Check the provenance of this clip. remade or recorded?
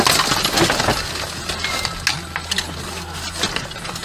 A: recorded